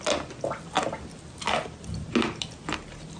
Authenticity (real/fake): real